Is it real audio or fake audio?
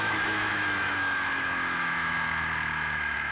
fake